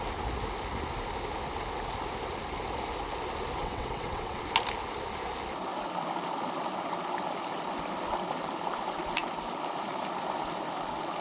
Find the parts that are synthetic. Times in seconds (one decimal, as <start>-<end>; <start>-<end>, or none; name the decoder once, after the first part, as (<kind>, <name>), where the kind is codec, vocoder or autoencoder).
3.6-4.4 (vocoder, WaveNeXt)